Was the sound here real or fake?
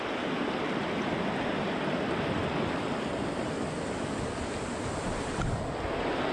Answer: real